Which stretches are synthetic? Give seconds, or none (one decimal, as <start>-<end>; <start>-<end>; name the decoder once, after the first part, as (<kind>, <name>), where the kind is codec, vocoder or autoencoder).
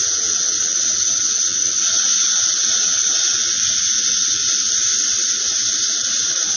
0.0-4.4 (vocoder, Vocos)